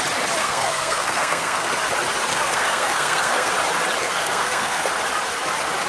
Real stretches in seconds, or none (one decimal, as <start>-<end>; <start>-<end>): 0.0-0.4; 1.7-2.3; 3.5-4.0; 4.9-5.9